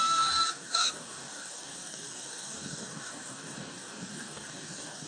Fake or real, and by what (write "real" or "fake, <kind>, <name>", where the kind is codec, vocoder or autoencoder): fake, codec, DAC